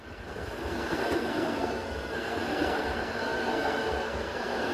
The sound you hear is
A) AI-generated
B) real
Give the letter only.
A